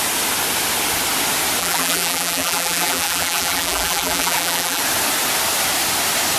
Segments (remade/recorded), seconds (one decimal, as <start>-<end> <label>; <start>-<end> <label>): 0.0-1.6 recorded; 1.6-4.8 remade; 4.8-6.4 recorded